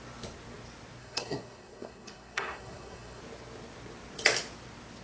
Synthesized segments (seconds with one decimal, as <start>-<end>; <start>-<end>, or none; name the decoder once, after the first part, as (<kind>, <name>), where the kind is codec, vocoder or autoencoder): 1.0-3.2 (codec, SNAC)